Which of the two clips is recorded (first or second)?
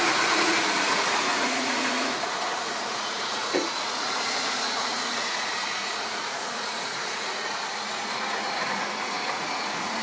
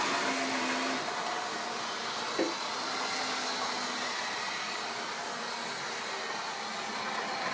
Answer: second